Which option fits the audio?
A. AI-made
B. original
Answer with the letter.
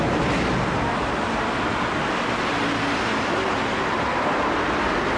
B